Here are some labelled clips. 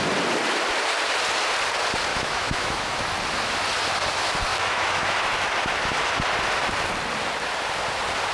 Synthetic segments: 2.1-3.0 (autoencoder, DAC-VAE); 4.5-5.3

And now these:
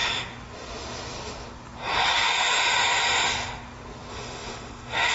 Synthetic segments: 1.9-2.7 (autoencoder, DAC-VAE); 4.1-5.1

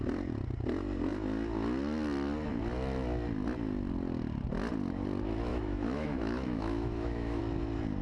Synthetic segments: 5.5-7.4 (autoencoder, DAC-VAE)

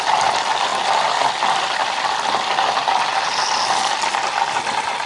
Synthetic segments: none